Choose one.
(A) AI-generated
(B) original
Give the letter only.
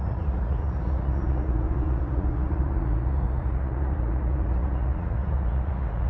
A